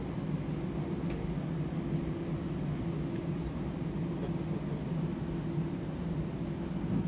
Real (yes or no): yes